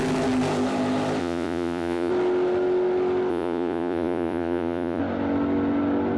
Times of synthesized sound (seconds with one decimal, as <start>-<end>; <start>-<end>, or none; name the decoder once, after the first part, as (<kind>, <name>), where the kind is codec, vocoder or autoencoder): 1.2-2.1 (vocoder, Vocos); 3.3-5.0